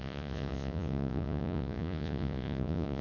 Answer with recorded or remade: remade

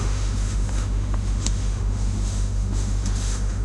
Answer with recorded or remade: remade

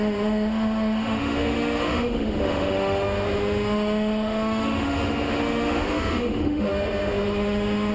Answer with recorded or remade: remade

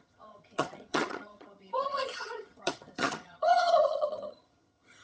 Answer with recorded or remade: remade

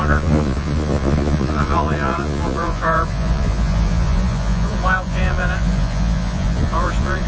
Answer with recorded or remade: remade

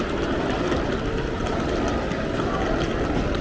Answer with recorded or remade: recorded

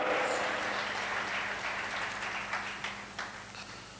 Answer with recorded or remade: recorded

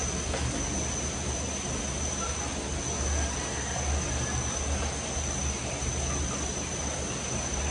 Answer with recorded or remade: recorded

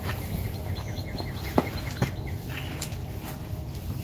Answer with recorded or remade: recorded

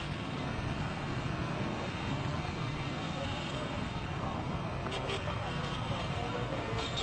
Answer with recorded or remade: remade